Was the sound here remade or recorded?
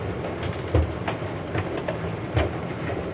remade